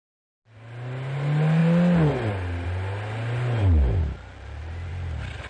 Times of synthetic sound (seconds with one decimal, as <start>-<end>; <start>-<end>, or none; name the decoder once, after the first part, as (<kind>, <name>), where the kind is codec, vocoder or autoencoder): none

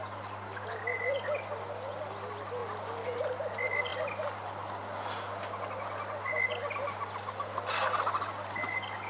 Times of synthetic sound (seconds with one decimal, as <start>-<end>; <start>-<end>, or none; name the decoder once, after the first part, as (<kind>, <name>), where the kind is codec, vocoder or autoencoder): none

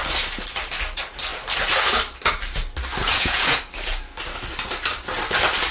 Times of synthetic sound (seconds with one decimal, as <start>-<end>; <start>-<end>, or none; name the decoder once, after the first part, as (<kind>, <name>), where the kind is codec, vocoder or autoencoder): 3.0-3.6 (vocoder, Vocos)